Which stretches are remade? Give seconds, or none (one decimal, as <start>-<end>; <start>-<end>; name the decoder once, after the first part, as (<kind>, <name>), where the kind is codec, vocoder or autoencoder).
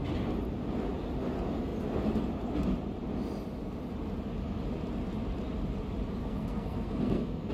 6.2-7.5 (codec, SNAC)